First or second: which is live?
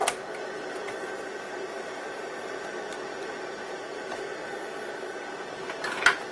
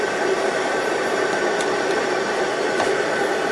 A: first